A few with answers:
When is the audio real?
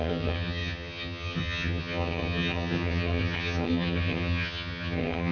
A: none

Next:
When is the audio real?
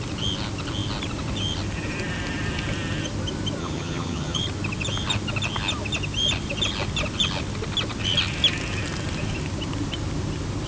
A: 0.0-3.6; 4.4-10.7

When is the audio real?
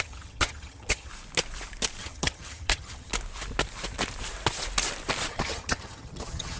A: 1.1-2.0; 3.1-5.3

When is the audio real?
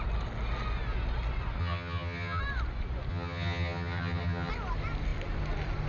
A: 0.0-1.6; 2.4-3.1; 4.5-5.9